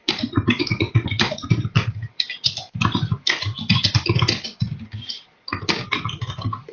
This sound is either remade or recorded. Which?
recorded